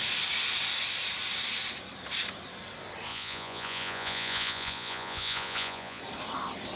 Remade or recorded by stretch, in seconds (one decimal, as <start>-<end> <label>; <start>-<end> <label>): 0.0-3.1 recorded; 3.1-6.0 remade; 6.0-6.8 recorded